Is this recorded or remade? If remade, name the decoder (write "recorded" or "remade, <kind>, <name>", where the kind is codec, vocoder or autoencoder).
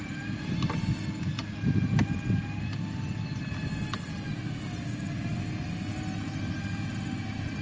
recorded